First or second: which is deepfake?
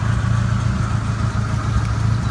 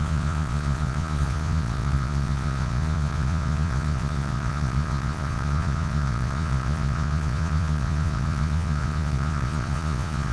second